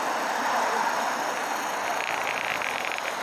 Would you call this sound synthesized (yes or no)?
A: no